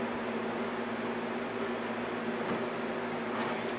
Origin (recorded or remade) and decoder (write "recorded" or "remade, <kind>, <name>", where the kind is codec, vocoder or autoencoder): recorded